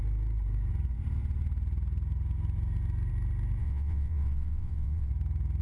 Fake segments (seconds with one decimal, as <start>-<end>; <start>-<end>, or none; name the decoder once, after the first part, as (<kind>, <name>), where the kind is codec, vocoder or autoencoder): 3.6-5.1 (vocoder, WaveNeXt)